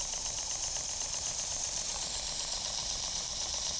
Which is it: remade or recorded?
remade